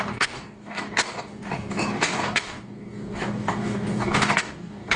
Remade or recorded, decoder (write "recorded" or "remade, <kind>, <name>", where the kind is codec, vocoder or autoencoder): remade, codec, DAC